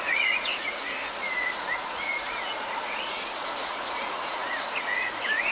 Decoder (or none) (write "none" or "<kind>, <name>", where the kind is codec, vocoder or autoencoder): vocoder, Vocos